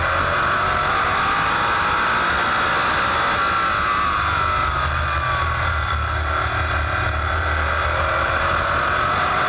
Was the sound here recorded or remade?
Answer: recorded